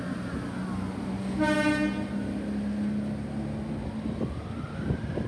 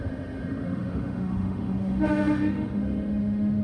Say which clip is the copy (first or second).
second